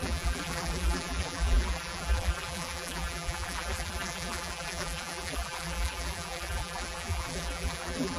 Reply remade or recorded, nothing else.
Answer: remade